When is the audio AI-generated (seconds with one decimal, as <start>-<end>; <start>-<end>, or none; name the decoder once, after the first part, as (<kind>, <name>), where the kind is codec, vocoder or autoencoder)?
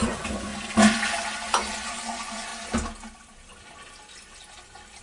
0.0-0.5 (vocoder, Vocos); 1.0-2.5